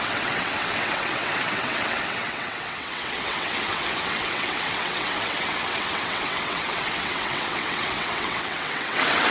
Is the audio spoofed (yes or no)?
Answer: yes